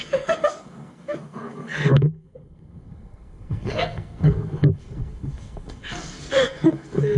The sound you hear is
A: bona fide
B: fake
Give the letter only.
B